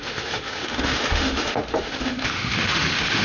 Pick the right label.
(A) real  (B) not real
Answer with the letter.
B